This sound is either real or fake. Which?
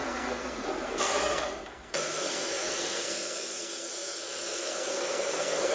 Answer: fake